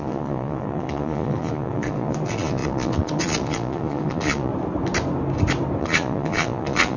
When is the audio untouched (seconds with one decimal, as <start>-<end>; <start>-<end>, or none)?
4.5-5.8